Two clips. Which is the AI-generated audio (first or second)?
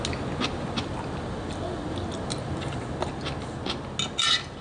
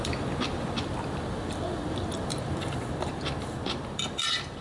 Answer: second